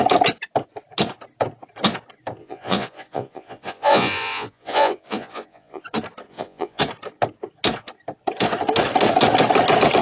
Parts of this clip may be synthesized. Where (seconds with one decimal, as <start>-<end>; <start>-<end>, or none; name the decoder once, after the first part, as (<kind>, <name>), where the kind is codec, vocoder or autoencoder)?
2.4-5.8 (vocoder, Vocos); 6.3-6.8